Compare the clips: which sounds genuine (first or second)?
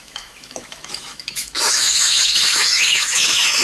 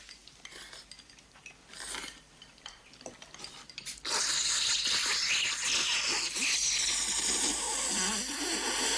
second